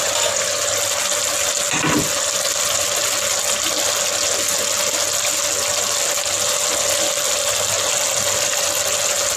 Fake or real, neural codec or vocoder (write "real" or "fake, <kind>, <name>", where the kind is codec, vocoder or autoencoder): real